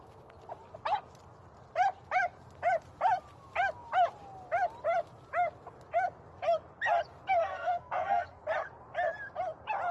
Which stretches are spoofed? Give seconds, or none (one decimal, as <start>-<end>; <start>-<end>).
7.4-8.4